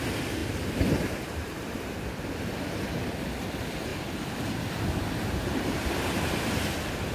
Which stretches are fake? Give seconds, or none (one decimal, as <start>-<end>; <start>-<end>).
0.4-1.6; 3.9-6.6